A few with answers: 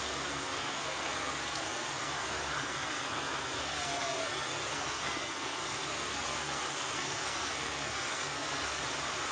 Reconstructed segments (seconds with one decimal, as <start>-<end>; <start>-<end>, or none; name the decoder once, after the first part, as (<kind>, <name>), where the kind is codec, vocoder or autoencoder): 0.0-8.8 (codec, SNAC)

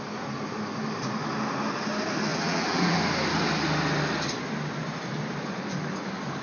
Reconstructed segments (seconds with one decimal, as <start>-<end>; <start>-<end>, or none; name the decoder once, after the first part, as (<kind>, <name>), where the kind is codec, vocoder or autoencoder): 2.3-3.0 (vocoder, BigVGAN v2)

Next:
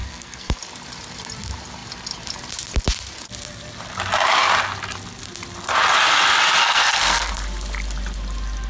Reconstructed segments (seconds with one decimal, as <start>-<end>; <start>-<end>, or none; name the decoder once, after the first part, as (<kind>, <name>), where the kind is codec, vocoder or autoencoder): 0.0-0.6 (codec, SNAC); 6.6-7.3